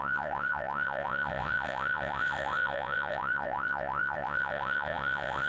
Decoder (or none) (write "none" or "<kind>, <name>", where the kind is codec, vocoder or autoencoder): vocoder, WaveNeXt